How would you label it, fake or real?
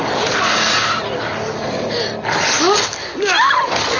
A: real